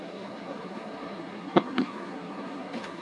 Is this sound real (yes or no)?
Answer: no